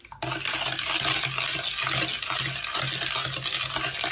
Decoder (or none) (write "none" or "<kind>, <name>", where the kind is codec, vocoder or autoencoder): none